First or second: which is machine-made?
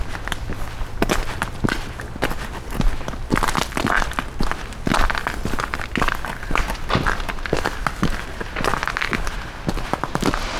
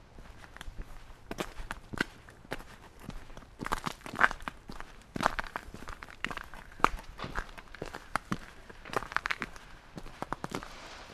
second